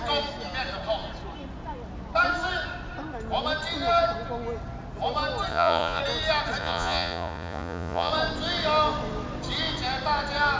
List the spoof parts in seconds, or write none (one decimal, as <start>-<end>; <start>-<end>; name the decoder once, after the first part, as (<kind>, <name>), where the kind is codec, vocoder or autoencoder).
5.5-6.0 (vocoder, Vocos); 6.6-8.1